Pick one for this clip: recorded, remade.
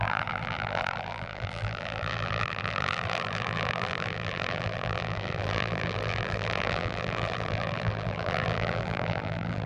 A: remade